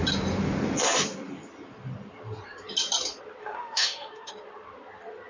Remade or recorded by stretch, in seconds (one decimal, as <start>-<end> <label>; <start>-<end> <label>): 0.0-3.4 recorded; 3.4-4.3 remade; 4.3-5.3 recorded